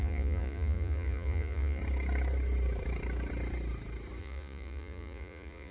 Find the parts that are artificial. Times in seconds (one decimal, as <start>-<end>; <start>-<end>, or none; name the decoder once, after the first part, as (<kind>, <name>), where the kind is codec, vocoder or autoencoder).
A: 0.0-1.8 (vocoder, Vocos); 4.2-5.7